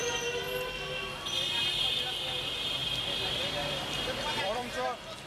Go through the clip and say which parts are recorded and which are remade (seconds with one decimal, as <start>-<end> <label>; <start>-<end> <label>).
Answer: 0.0-2.8 recorded; 2.8-4.0 remade; 4.0-4.4 recorded; 4.4-5.3 remade